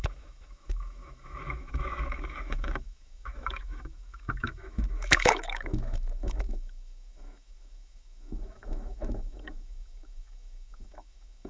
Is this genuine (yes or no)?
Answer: no